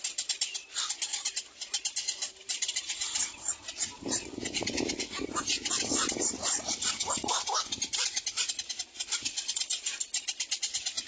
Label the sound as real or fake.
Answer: real